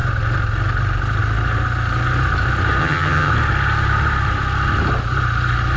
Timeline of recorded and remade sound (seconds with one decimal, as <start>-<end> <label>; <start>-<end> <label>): 0.0-2.8 recorded; 2.8-3.3 remade; 3.3-5.8 recorded